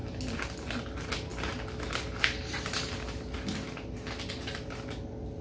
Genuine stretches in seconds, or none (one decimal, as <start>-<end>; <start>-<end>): 0.0-5.4